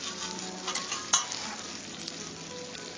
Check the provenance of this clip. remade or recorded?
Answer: recorded